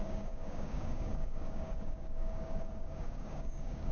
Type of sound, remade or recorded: remade